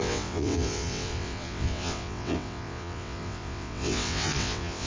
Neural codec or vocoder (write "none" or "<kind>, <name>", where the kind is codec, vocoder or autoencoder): vocoder, WaveNeXt